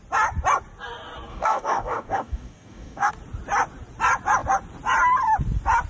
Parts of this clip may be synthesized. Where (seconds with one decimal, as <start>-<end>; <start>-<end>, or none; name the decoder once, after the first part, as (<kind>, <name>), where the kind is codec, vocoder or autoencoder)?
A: 1.3-3.1 (codec, DAC)